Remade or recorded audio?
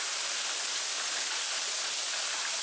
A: recorded